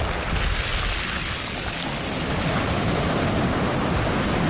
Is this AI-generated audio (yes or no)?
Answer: no